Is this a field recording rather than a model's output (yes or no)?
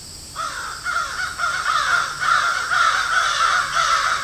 yes